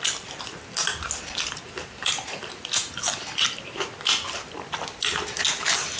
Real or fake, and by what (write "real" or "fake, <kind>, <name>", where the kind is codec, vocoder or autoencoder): real